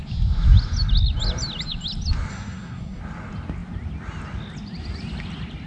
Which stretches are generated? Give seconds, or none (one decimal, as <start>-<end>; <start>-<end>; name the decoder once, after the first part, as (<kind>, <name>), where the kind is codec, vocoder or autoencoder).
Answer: 2.3-3.0 (codec, SNAC)

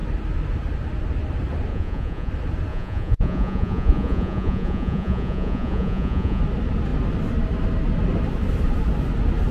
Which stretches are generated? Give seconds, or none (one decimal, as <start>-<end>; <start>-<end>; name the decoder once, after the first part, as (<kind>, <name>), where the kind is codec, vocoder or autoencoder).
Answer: 1.7-2.3 (vocoder, Vocos); 2.7-6.4

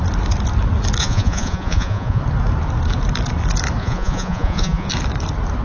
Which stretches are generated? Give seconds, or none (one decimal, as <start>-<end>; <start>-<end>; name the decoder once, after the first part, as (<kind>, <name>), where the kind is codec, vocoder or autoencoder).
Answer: 1.0-2.2 (vocoder, Vocos); 3.8-4.9

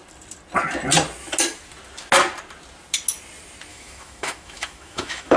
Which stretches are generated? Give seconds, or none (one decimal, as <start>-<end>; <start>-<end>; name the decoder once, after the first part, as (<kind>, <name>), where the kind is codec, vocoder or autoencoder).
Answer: 3.7-5.4 (autoencoder, DAC-VAE)

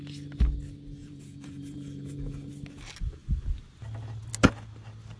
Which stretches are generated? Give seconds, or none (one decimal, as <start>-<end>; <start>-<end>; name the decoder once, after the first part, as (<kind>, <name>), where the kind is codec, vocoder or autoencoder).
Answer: 1.0-2.5 (vocoder, Vocos)